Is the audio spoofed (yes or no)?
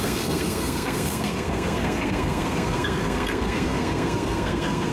yes